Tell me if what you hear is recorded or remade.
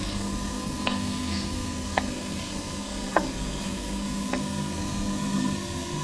remade